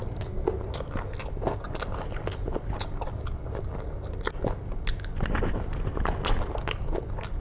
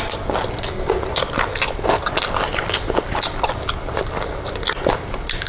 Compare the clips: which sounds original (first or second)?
first